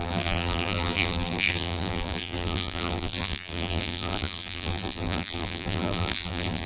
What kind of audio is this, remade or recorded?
remade